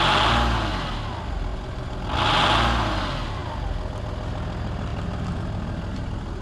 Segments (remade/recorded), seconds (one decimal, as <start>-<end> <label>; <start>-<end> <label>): 0.0-1.5 recorded; 1.5-2.0 remade; 2.0-6.4 recorded